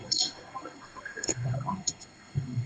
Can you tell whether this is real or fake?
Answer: fake